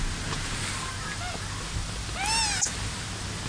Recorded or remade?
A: recorded